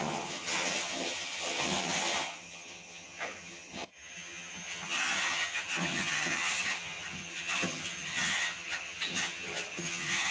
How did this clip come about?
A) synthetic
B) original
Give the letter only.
A